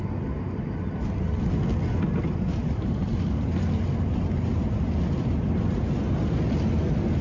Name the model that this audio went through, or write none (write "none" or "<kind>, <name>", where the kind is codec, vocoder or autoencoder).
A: none